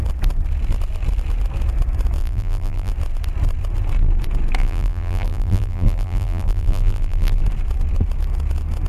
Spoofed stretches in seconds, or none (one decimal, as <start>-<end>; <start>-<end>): 2.2-2.9; 4.6-7.4

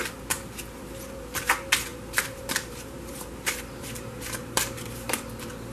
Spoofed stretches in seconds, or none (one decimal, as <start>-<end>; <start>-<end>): 1.9-5.3

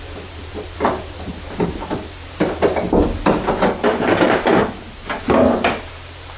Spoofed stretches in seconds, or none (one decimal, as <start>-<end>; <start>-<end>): 4.6-5.2

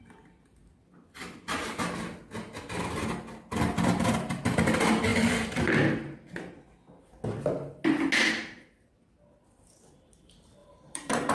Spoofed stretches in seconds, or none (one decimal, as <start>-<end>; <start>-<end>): 10.6-11.3

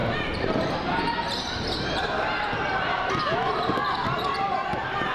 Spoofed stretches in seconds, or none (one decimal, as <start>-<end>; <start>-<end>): 0.0-3.1

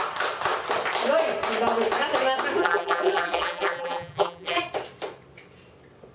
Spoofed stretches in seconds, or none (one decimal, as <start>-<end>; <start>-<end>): 2.6-4.6

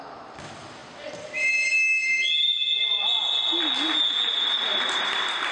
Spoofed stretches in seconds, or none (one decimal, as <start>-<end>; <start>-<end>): 4.7-5.5

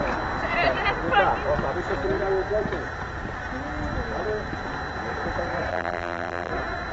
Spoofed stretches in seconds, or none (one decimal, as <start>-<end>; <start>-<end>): 5.7-6.5